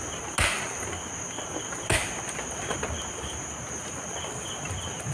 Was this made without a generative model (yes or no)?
yes